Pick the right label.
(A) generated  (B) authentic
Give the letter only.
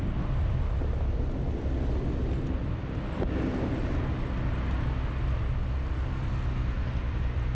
B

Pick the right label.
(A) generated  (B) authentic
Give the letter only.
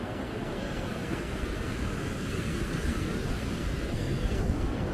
A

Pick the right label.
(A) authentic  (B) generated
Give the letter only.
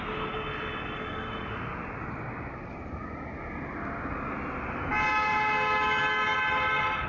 A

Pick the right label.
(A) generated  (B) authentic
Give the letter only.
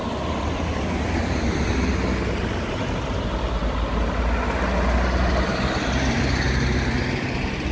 B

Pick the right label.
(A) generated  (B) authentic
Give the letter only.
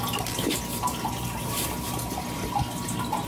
B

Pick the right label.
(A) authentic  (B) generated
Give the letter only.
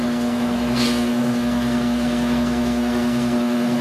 B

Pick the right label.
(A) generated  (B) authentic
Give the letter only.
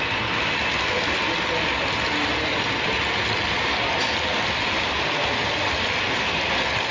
B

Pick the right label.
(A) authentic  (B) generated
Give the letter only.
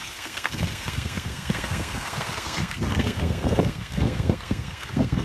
B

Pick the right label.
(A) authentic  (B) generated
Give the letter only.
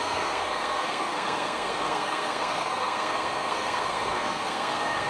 B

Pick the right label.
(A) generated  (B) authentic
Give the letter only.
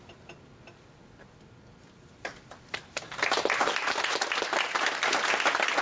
B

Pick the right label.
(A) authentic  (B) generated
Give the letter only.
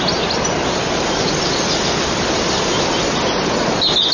A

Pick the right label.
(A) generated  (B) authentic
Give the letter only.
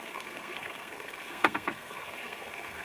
A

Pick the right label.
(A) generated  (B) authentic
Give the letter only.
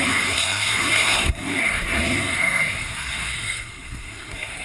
A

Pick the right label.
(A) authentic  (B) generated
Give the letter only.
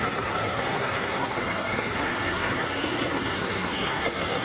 B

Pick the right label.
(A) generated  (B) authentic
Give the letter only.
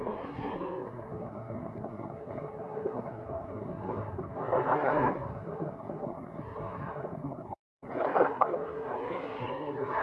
A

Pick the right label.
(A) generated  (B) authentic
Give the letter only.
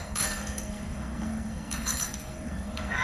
A